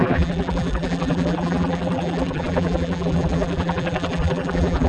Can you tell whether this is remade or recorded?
remade